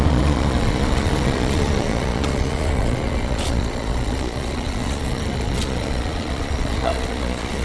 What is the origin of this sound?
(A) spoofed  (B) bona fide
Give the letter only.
A